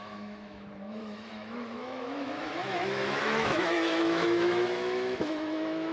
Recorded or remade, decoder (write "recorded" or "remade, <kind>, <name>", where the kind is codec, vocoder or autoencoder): remade, autoencoder, DAC-VAE